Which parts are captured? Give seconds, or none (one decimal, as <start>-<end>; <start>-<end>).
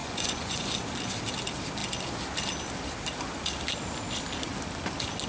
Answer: 0.6-5.3